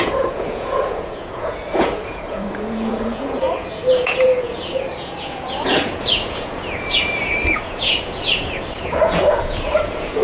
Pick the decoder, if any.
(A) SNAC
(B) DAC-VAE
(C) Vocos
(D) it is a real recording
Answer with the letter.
C